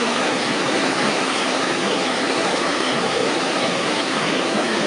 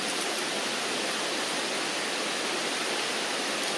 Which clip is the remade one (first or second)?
first